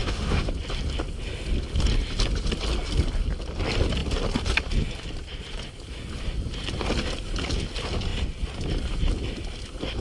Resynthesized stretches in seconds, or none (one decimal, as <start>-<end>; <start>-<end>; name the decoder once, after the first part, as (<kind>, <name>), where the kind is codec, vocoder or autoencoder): 0.0-0.5 (autoencoder, DAC-VAE)

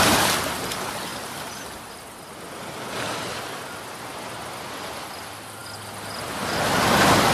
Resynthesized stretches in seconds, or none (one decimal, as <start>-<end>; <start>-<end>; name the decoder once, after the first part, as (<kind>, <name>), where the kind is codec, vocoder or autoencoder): none